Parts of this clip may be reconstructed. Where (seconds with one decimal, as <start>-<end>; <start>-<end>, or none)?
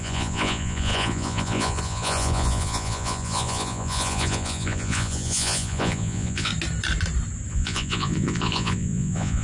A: 0.0-6.5; 7.5-9.4